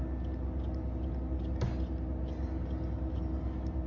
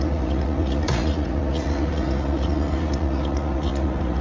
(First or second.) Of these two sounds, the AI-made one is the second